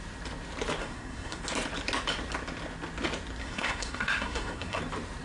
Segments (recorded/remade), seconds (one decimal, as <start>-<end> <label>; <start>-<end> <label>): 0.0-0.8 recorded; 0.8-1.4 remade; 1.4-3.4 recorded; 3.4-4.8 remade; 4.8-5.2 recorded